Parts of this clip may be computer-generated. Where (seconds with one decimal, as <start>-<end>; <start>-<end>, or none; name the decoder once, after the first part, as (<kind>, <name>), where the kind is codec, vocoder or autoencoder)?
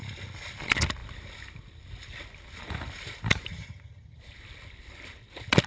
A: 3.5-4.2 (vocoder, HiFi-GAN)